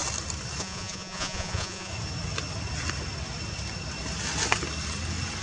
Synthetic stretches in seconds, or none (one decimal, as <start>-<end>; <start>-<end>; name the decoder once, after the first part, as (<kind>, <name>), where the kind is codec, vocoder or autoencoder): 0.6-1.9 (vocoder, Vocos)